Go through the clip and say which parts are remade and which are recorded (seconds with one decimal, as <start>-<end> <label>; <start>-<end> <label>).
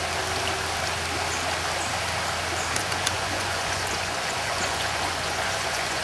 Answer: 0.0-2.8 recorded; 2.8-6.0 remade